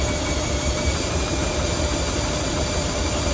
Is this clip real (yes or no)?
no